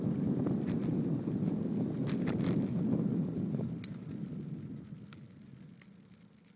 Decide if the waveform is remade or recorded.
recorded